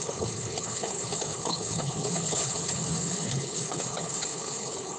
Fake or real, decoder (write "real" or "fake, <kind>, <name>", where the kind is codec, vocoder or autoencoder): fake, codec, HILCodec